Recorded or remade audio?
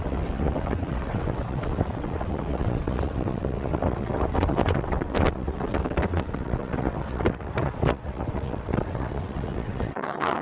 remade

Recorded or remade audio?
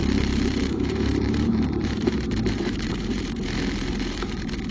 remade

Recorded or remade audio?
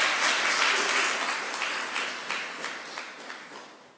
recorded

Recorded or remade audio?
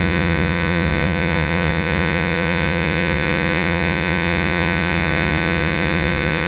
remade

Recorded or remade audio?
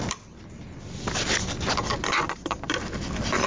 recorded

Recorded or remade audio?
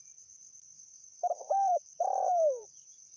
remade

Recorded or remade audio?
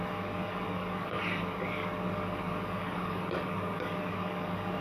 remade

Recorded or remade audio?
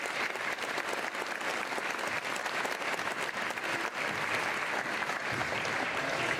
recorded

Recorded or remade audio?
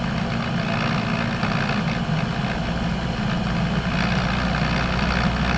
recorded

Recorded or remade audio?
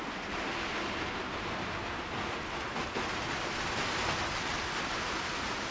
recorded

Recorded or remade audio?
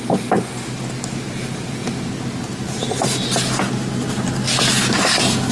recorded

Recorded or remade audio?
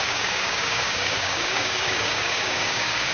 remade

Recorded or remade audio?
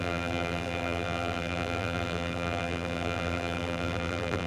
remade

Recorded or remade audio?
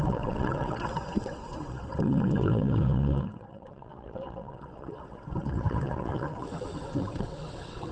remade